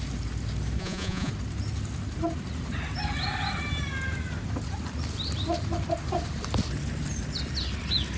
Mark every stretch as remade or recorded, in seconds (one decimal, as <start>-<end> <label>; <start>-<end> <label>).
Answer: 0.0-0.8 recorded; 0.8-1.3 remade; 1.3-8.2 recorded